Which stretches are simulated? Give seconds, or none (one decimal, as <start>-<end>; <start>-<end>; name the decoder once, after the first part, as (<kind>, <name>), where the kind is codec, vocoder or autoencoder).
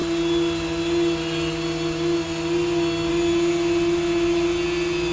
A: none